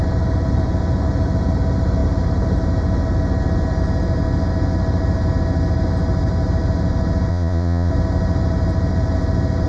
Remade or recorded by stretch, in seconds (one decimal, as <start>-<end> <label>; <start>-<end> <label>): 0.0-7.3 recorded; 7.3-7.9 remade; 7.9-9.7 recorded